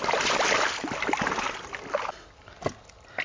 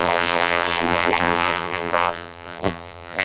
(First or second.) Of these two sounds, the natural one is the first